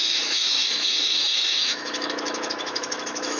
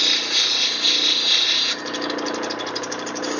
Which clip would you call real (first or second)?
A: second